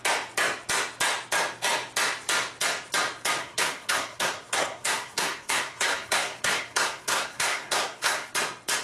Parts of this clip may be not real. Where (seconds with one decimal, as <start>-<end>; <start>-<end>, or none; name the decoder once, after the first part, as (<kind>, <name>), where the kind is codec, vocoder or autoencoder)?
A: 3.4-8.3 (codec, SNAC)